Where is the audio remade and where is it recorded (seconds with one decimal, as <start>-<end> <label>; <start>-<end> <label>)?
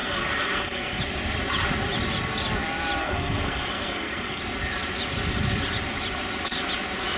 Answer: 0.0-1.0 remade; 1.0-3.0 recorded; 3.0-4.4 remade; 4.4-7.2 recorded